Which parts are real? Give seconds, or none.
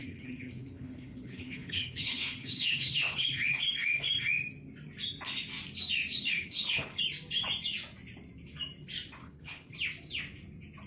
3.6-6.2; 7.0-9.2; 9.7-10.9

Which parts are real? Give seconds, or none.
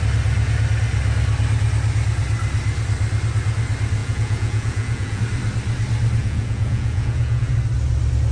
0.0-4.0; 5.2-6.2; 7.5-8.3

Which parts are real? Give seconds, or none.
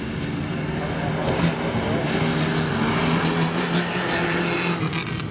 0.0-5.3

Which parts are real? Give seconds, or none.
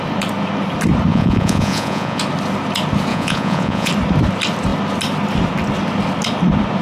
0.0-1.1; 2.2-3.1; 3.9-6.8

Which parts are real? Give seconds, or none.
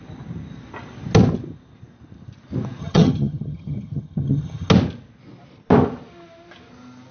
0.0-2.8; 4.7-7.1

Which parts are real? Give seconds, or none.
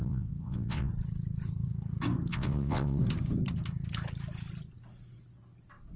0.9-2.3; 3.0-6.0